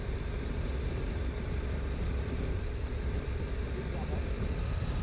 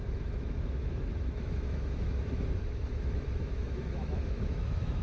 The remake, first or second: second